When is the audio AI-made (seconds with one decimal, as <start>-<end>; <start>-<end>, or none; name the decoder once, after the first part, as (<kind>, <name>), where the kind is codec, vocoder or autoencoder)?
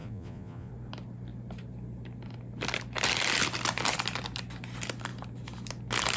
0.0-0.7 (vocoder, Vocos)